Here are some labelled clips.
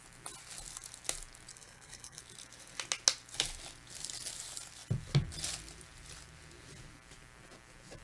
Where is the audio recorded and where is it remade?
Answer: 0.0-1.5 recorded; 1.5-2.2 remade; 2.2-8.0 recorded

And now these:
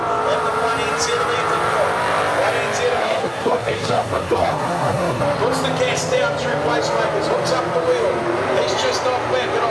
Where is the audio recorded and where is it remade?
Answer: 0.0-3.0 recorded; 3.0-5.2 remade; 5.2-9.7 recorded

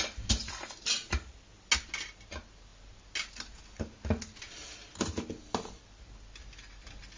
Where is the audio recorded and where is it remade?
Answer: 0.0-7.2 recorded